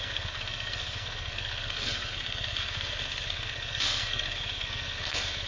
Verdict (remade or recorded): remade